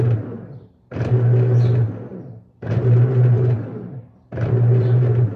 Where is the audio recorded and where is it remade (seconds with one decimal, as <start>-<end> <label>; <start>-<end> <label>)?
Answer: 0.0-2.1 recorded; 2.1-5.4 remade

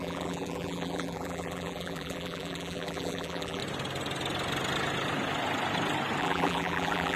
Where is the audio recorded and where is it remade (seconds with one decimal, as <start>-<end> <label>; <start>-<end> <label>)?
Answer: 0.0-3.6 remade; 3.6-6.2 recorded; 6.2-7.2 remade

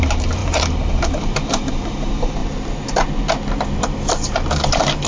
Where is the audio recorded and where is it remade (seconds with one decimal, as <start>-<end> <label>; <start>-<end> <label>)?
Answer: 0.0-2.4 remade; 2.4-3.8 recorded; 3.8-5.1 remade

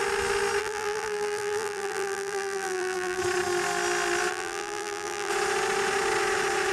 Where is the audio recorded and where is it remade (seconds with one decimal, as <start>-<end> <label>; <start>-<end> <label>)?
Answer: 0.0-0.6 recorded; 0.6-3.2 remade; 3.2-4.3 recorded; 4.3-5.3 remade; 5.3-6.7 recorded

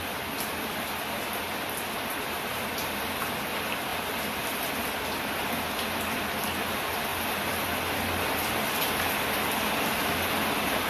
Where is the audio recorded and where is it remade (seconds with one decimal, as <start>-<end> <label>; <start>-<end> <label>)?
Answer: 0.0-10.9 recorded

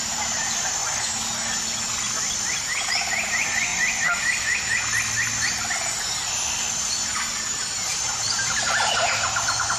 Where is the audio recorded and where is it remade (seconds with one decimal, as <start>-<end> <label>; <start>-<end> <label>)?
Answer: 0.0-0.8 remade; 0.8-2.8 recorded; 2.8-3.7 remade; 3.7-6.7 recorded; 6.7-9.8 remade

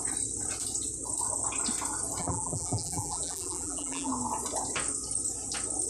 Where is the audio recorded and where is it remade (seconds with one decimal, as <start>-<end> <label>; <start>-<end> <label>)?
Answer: 0.0-2.2 recorded; 2.2-4.1 remade; 4.1-5.9 recorded

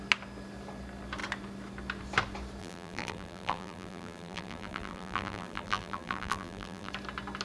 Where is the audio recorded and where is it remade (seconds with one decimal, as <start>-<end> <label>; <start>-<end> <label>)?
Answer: 0.0-2.6 recorded; 2.6-6.9 remade; 6.9-7.4 recorded